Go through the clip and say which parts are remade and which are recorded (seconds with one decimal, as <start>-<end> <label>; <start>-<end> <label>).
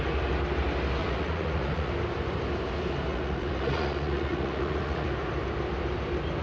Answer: 0.0-1.0 recorded; 1.0-1.9 remade; 1.9-3.1 recorded; 3.1-5.1 remade; 5.1-6.4 recorded